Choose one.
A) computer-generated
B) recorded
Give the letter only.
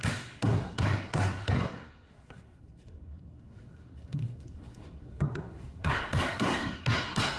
A